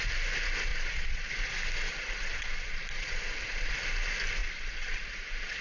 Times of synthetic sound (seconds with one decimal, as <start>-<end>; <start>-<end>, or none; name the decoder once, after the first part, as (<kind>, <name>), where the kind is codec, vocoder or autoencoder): 0.7-1.3 (vocoder, Vocos); 1.9-3.7; 4.4-5.6